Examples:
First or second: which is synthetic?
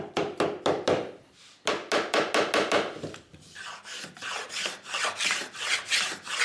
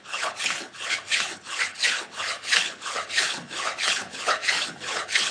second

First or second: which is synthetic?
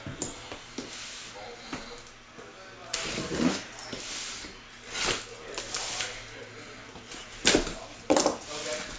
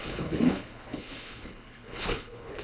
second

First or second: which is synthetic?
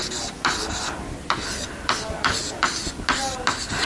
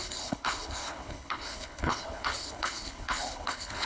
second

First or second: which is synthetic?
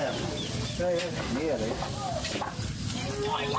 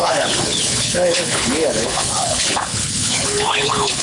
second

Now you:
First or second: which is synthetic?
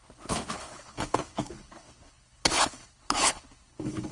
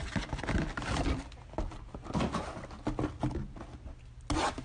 first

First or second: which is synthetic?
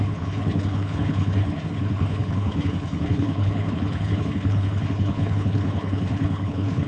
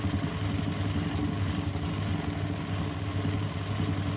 first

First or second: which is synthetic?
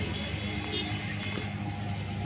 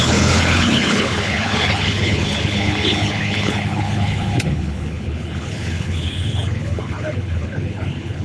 second